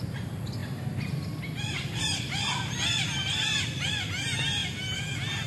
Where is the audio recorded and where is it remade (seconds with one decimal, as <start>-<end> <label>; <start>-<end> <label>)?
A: 0.0-5.5 recorded